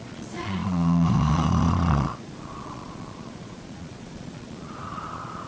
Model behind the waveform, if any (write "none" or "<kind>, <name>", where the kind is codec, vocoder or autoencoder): vocoder, Vocos